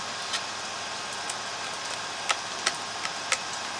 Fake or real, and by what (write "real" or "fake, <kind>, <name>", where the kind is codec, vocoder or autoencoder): real